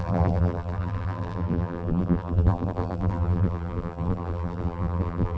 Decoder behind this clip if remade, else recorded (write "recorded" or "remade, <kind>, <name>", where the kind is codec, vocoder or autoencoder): remade, vocoder, BigVGAN v2